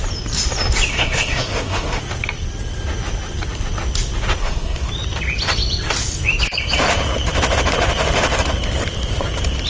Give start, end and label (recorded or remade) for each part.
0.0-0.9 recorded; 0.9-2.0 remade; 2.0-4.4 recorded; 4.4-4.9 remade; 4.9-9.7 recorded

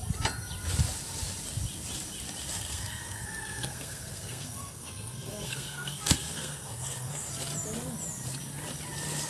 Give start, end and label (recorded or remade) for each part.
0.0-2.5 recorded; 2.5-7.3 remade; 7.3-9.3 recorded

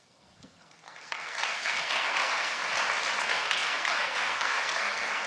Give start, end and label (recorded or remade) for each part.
0.0-2.6 remade; 2.6-3.2 recorded; 3.2-5.3 remade

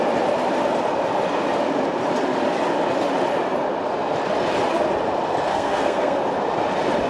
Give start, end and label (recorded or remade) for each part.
0.0-5.5 recorded; 5.5-6.2 remade; 6.2-7.1 recorded